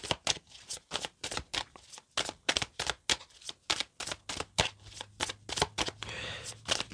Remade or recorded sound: recorded